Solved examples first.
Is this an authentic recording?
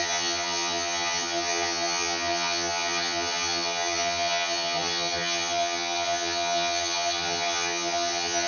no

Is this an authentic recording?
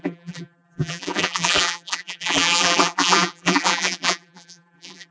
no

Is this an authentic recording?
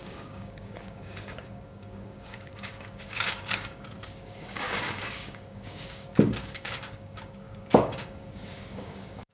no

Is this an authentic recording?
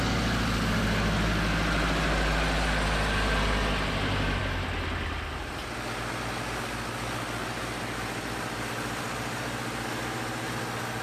yes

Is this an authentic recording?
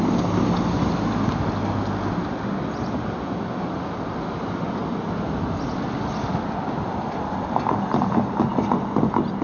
yes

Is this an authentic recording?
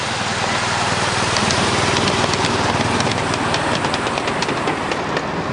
yes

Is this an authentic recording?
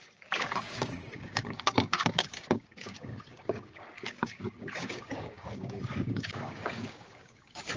no